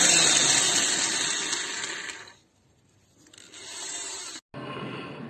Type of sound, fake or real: real